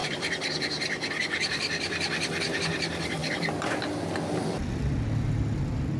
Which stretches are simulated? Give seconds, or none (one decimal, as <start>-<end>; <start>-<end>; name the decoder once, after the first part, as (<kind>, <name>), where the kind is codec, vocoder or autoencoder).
0.0-2.7 (vocoder, BigVGAN v2)